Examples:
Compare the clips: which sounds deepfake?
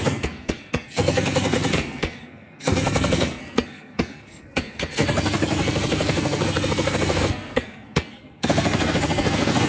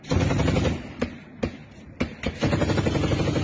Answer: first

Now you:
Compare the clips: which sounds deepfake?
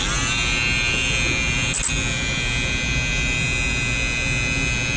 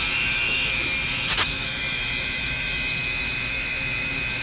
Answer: second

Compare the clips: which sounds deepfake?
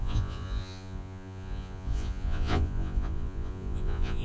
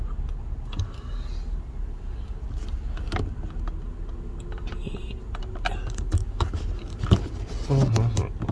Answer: first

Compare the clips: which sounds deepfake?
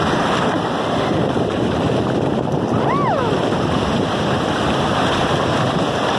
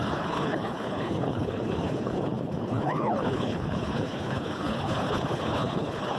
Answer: second